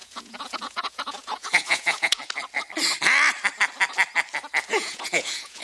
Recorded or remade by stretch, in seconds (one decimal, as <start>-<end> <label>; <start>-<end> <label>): 0.0-2.2 remade; 2.2-4.7 recorded; 4.7-5.6 remade